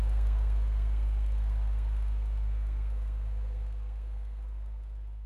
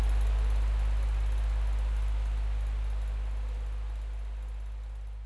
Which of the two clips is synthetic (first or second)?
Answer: first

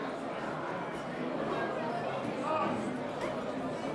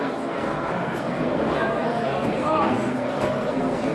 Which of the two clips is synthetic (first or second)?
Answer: second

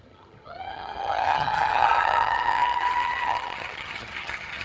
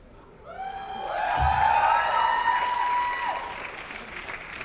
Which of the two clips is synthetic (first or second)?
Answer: first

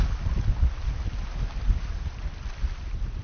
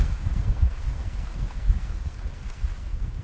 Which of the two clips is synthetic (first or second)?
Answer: second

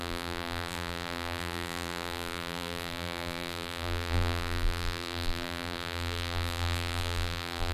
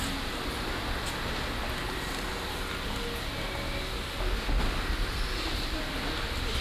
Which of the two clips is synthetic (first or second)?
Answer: first